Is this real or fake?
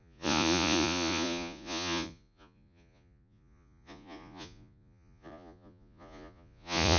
fake